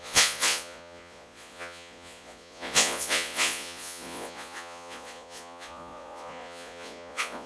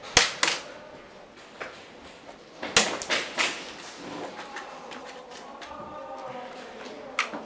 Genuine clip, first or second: second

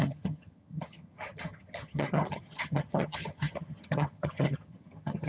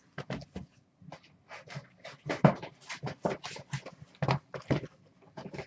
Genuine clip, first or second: second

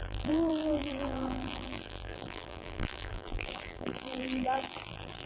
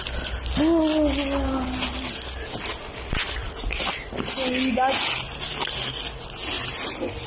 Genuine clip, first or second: second